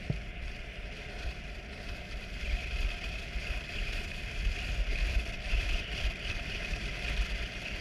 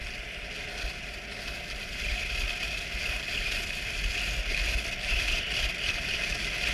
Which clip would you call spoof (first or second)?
first